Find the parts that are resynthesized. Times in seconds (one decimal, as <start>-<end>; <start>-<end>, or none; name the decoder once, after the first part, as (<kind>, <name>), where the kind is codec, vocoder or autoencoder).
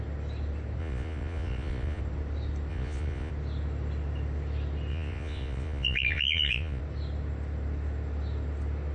0.8-2.0 (vocoder, Vocos); 2.7-3.3; 4.9-6.8